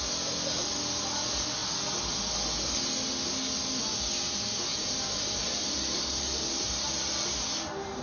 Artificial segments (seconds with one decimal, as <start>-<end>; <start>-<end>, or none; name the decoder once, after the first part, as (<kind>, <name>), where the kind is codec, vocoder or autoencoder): 4.7-6.9 (vocoder, BigVGAN v2)